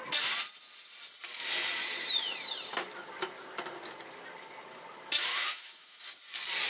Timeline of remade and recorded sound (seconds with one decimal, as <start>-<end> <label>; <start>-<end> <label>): 0.0-5.3 recorded; 5.3-6.0 remade; 6.0-6.7 recorded